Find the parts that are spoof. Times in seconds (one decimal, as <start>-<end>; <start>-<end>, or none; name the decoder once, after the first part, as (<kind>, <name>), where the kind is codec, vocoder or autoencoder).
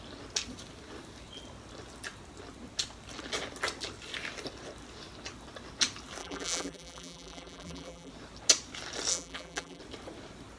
6.2-8.1 (vocoder, BigVGAN v2); 9.1-9.8